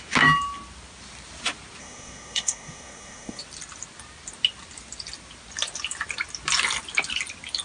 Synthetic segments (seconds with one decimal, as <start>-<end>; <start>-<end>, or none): 1.8-3.4